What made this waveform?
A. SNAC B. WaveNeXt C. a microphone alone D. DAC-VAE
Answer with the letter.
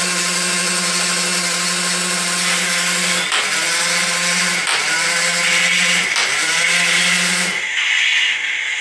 C